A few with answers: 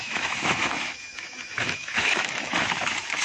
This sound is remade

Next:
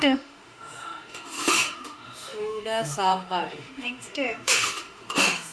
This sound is remade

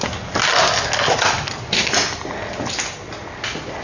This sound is recorded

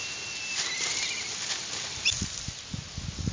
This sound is recorded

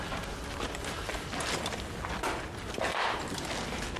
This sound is recorded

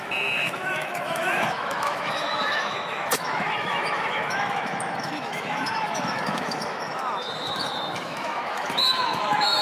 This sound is remade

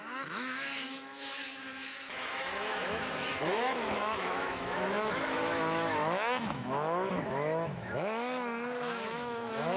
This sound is remade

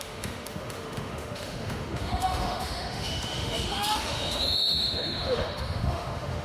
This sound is remade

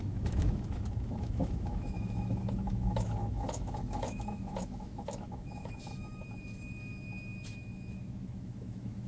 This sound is remade